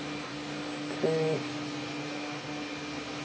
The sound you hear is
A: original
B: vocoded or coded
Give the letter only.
A